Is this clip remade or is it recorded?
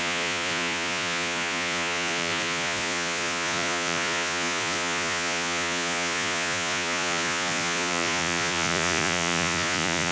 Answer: remade